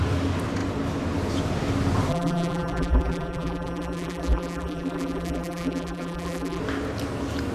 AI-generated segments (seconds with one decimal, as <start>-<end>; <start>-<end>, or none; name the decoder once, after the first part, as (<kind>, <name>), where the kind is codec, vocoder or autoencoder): 2.1-6.6 (vocoder, BigVGAN v2)